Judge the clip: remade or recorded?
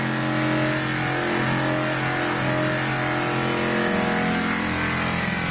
recorded